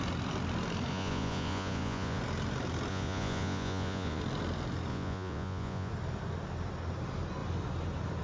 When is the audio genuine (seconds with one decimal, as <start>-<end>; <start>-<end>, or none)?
0.0-0.9; 2.2-2.9; 4.2-4.9; 5.9-8.2